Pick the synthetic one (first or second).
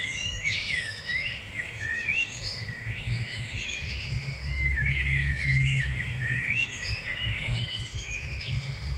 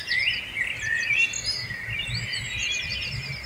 first